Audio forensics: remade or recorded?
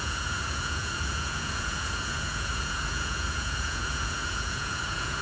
remade